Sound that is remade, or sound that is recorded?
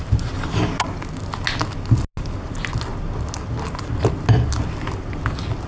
recorded